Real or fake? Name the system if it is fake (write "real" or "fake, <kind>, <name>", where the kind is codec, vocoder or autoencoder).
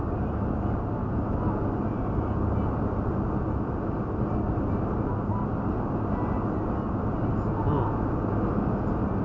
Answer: real